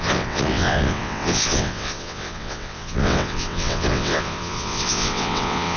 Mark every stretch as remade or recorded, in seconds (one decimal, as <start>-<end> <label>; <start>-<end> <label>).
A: 0.0-5.8 remade